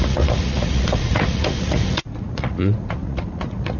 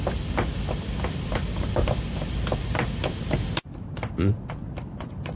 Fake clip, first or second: first